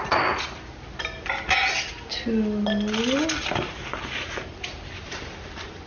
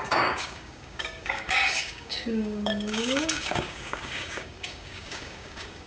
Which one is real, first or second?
first